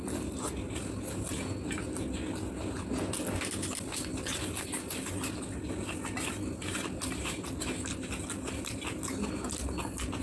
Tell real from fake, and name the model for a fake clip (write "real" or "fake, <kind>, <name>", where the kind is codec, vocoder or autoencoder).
real